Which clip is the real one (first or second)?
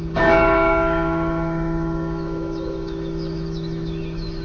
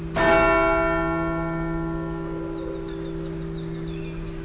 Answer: second